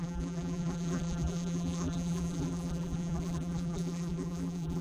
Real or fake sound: fake